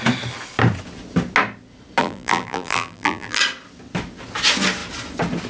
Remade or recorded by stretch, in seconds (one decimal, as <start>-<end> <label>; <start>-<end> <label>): 0.0-2.0 recorded; 2.0-3.4 remade; 3.4-5.5 recorded